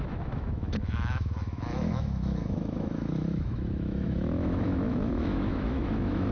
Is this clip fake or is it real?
fake